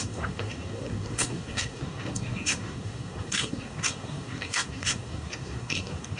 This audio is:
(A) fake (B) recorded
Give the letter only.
A